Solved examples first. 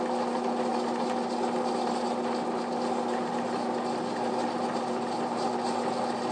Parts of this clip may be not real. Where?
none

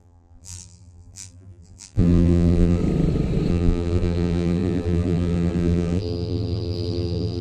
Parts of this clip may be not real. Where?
0.0-2.8 (vocoder, BigVGAN v2); 3.5-7.4